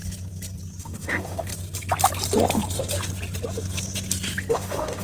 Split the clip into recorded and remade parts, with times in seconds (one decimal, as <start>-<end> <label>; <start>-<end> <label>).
0.0-0.8 recorded; 0.8-1.5 remade; 1.5-4.5 recorded; 4.5-5.0 remade